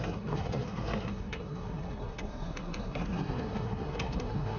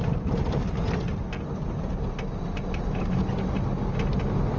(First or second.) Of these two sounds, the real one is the second